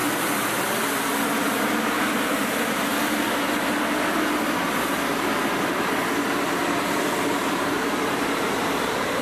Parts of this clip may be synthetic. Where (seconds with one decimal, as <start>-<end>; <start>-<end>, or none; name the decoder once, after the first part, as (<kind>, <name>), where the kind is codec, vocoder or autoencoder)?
2.0-2.4 (vocoder, BigVGAN v2); 7.3-9.2

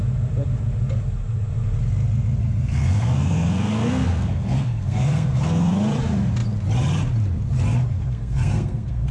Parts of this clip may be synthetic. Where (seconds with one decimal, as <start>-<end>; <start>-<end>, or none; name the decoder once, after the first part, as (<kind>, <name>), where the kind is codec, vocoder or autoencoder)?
2.4-5.7 (codec, SNAC); 7.8-9.1

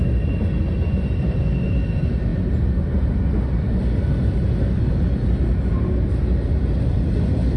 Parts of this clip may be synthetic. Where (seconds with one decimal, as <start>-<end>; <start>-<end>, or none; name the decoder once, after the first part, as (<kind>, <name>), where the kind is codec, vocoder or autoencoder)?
none

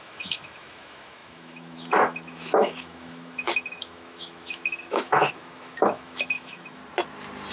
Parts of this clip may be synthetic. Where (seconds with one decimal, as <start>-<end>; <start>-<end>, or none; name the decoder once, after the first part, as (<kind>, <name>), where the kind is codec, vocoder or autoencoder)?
0.0-6.8 (autoencoder, DAC-VAE)

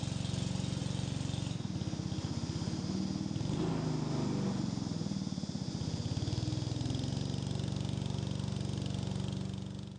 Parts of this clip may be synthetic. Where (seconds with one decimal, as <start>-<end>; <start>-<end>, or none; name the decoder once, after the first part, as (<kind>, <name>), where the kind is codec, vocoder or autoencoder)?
none

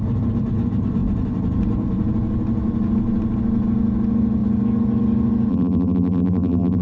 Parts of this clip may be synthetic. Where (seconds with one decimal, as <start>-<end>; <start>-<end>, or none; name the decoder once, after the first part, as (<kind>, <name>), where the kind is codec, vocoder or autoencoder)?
5.5-6.8 (vocoder, BigVGAN v2)

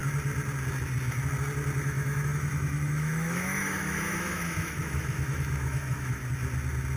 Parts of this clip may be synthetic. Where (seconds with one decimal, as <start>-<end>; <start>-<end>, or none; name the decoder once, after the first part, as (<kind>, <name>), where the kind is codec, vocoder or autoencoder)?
1.8-6.2 (autoencoder, DAC-VAE)

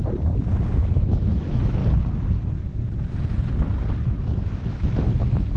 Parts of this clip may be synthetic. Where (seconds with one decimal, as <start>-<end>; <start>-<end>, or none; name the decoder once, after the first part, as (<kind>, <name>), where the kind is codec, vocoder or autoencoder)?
0.7-1.8 (autoencoder, DAC-VAE); 4.1-5.6